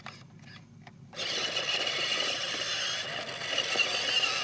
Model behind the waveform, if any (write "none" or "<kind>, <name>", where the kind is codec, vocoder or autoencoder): none